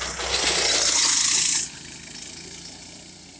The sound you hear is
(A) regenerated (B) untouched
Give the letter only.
B